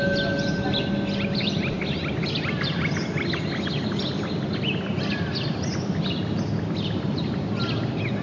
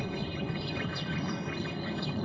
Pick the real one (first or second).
first